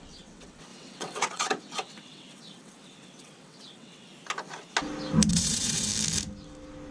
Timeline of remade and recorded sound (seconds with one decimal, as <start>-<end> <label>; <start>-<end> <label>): 0.0-4.1 remade; 4.1-5.3 recorded; 5.3-5.9 remade; 5.9-6.9 recorded